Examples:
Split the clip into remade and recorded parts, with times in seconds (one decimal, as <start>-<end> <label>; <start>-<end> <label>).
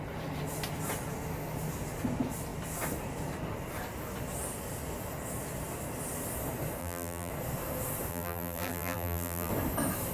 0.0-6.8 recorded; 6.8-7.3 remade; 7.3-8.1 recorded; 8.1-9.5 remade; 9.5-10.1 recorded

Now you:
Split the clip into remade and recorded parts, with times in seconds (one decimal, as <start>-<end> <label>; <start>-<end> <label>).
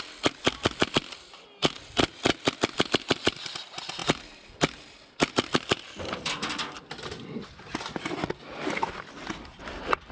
0.0-10.1 recorded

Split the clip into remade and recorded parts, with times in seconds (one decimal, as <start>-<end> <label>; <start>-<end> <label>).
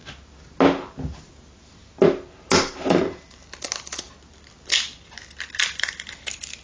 0.0-6.6 recorded